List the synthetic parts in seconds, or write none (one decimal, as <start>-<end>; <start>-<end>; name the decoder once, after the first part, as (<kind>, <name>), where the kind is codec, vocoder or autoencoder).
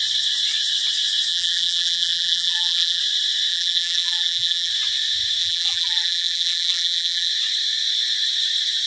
1.3-3.0 (vocoder, BigVGAN v2); 3.5-4.7; 5.4-7.3